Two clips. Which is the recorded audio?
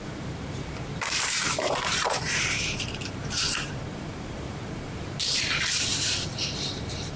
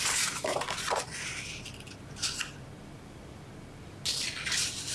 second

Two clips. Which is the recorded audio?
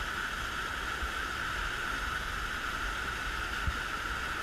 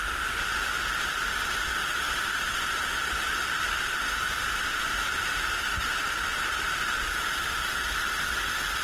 first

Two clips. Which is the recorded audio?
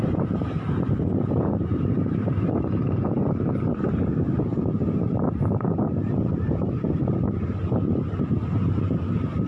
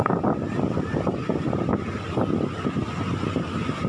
second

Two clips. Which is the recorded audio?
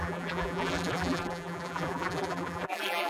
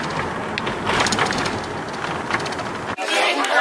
second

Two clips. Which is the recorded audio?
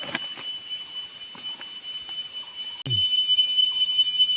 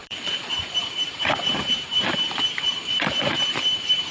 first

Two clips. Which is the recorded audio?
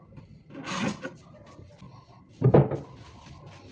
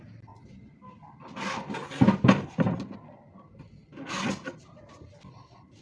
second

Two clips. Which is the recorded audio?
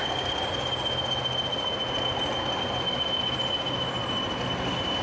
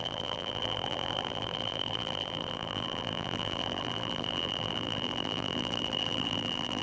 first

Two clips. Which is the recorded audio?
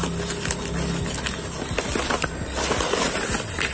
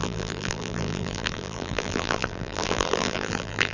first